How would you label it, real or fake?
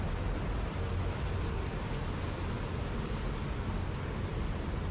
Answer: real